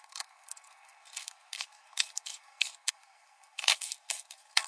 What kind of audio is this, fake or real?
fake